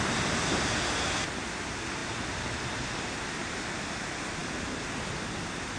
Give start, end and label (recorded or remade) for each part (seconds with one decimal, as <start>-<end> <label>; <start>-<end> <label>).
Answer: 0.0-0.5 recorded; 0.5-1.3 remade; 1.3-2.0 recorded; 2.0-3.5 remade; 3.5-5.8 recorded